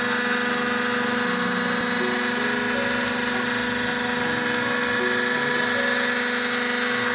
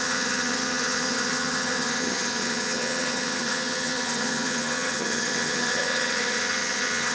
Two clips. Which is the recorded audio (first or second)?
first